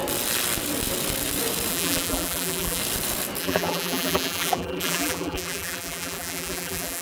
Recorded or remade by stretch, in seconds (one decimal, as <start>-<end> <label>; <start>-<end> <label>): 0.0-1.7 recorded; 1.7-2.8 remade; 2.8-3.4 recorded; 3.4-7.0 remade